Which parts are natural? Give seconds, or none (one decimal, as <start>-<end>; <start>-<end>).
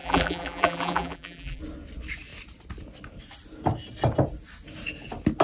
1.6-5.4